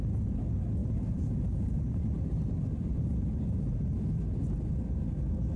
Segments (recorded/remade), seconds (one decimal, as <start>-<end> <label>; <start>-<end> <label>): 0.0-0.8 recorded; 0.8-3.6 remade; 3.6-5.6 recorded